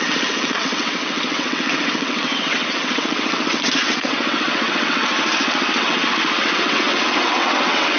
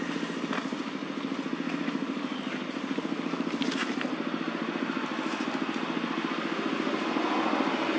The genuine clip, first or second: second